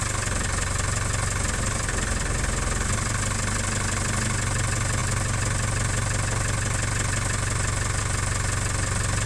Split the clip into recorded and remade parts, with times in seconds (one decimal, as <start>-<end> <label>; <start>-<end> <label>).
0.0-9.3 recorded